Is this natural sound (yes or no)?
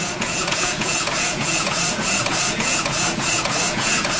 no